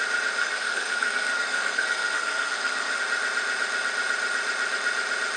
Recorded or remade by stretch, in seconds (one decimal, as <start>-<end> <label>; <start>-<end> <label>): 0.0-0.4 recorded; 0.4-3.0 remade; 3.0-5.4 recorded